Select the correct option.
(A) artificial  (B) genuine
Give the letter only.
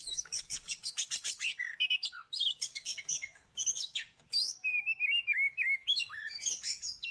A